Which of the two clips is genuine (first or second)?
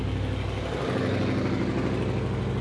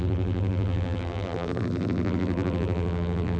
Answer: first